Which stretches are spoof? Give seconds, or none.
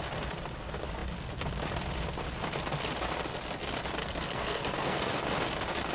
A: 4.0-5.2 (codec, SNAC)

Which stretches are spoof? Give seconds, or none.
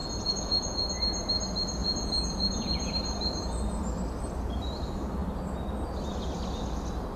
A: 0.0-1.0 (vocoder, Vocos); 1.8-2.9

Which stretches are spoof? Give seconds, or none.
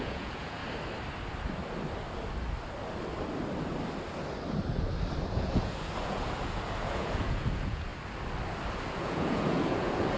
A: 0.0-0.6 (vocoder, Vocos); 5.3-7.9; 9.0-10.2